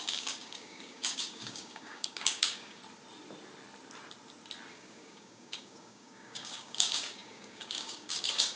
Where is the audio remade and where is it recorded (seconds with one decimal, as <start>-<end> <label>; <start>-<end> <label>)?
0.0-2.8 remade; 2.8-4.7 recorded; 4.7-8.6 remade